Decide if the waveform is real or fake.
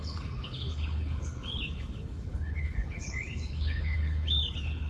fake